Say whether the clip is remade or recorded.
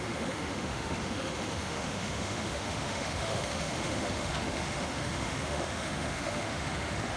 remade